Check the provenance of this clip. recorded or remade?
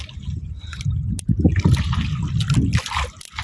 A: recorded